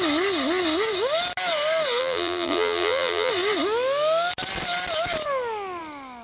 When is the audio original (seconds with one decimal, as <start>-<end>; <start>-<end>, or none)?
0.0-2.0; 3.3-6.2